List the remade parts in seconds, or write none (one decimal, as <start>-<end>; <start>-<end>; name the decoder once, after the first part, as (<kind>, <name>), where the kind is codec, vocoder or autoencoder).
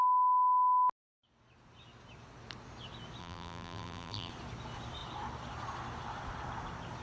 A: 3.2-4.3 (vocoder, BigVGAN v2)